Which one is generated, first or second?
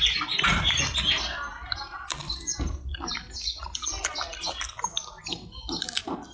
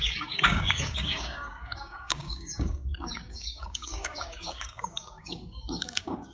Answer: second